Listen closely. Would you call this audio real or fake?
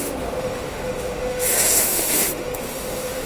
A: fake